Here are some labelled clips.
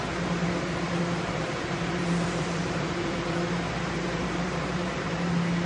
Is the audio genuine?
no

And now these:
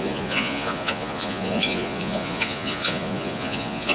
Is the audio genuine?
no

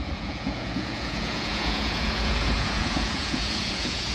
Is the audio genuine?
no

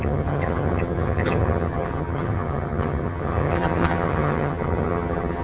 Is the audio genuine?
no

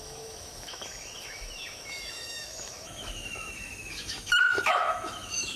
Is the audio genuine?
no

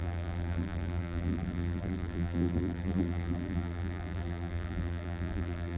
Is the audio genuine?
no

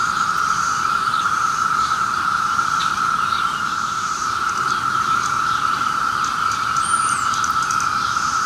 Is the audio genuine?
no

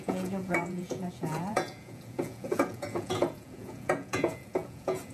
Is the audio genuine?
no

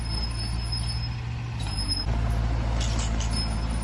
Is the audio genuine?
yes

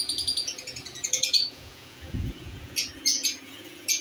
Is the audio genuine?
no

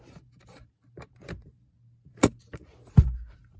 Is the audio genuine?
no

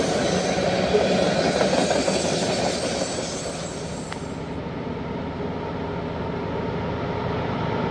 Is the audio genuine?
yes